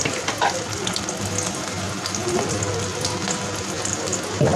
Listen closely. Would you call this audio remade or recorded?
recorded